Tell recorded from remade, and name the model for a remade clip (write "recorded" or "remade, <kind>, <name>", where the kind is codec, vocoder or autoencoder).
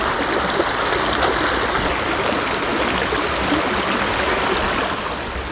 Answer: recorded